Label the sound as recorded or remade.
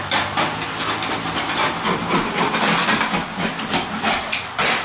recorded